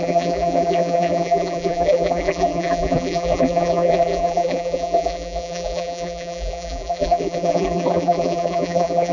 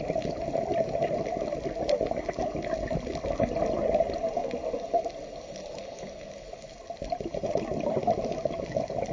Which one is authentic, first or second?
second